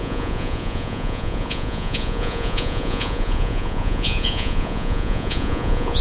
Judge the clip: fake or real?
fake